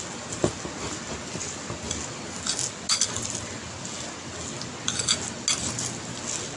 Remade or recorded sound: recorded